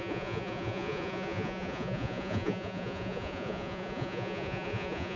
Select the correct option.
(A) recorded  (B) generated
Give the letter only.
B